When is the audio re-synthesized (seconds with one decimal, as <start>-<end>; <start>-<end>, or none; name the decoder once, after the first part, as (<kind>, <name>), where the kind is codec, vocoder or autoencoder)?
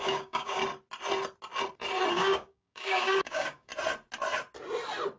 0.0-0.6 (codec, DAC); 2.1-3.7